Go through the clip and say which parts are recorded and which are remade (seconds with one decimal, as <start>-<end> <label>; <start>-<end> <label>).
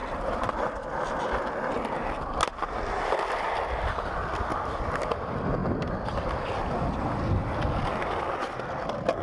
0.0-9.2 recorded